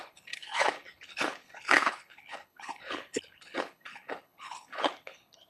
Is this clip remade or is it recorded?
remade